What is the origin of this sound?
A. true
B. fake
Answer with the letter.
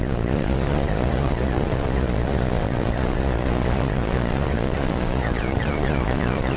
B